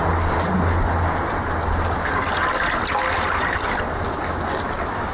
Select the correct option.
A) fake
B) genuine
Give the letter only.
B